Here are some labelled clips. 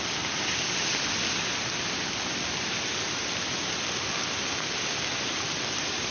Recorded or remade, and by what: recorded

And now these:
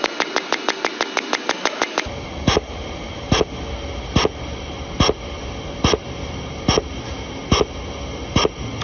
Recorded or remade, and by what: recorded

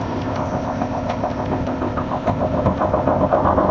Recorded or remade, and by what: remade, codec, ZipCodec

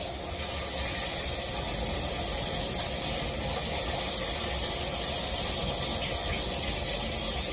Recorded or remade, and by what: recorded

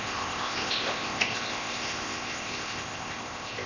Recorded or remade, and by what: remade, codec, ZipCodec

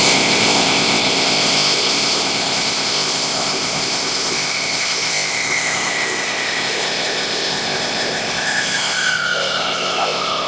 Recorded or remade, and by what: remade, codec, ZipCodec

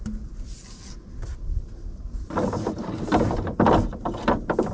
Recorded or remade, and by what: recorded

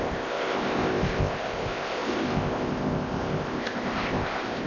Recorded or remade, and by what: remade, codec, ZipCodec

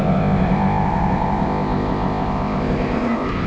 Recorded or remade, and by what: remade, codec, ZipCodec